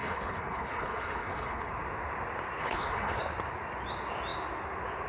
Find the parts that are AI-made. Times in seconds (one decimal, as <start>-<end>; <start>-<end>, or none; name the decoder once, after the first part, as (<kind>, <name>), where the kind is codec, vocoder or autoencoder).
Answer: 0.0-1.7 (codec, HILCodec); 2.6-3.2